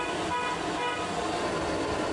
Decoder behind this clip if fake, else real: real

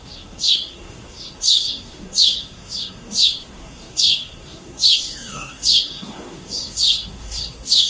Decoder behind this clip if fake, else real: fake, codec, SNAC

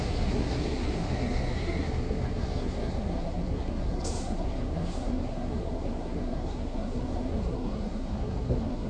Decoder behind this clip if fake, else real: fake, codec, SNAC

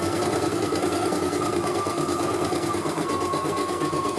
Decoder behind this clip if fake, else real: fake, codec, SNAC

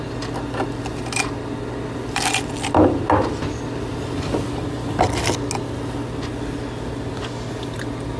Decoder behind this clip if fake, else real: real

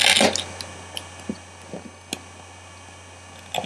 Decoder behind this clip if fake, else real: real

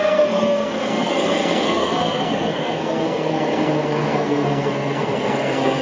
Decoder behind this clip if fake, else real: fake, codec, SNAC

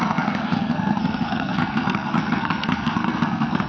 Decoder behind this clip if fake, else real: fake, codec, SNAC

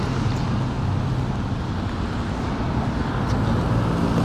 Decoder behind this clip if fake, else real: real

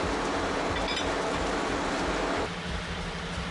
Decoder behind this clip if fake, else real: real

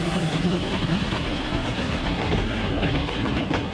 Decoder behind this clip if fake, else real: fake, codec, SNAC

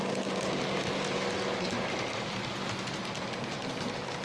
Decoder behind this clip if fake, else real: real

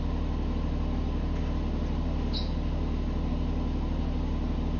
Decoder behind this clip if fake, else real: real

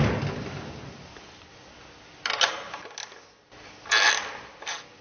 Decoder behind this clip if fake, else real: real